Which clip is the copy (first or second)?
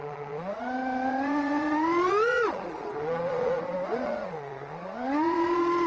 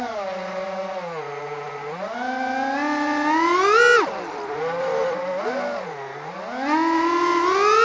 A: first